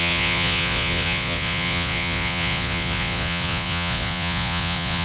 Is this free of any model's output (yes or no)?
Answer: no